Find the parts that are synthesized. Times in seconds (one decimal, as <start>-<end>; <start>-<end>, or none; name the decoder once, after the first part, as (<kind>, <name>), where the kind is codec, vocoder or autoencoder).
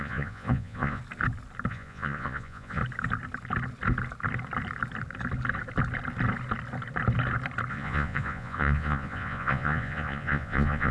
0.0-1.0 (vocoder, Vocos); 1.7-2.8; 7.7-10.9